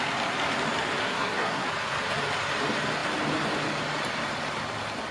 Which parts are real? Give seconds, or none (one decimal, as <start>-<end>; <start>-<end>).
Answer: 0.0-1.0; 1.7-5.1